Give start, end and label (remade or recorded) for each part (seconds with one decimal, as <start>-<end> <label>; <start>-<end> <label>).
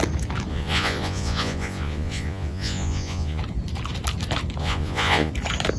0.0-0.5 recorded; 0.5-3.4 remade; 3.4-4.6 recorded; 4.6-5.3 remade; 5.3-5.8 recorded